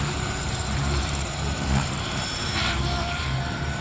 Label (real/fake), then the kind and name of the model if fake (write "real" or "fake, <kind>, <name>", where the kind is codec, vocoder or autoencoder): fake, vocoder, BigVGAN v2